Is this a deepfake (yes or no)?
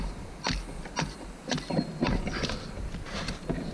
no